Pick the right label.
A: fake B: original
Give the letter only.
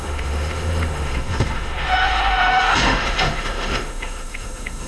A